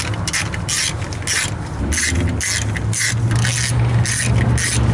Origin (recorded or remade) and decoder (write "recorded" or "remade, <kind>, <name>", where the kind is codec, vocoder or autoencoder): recorded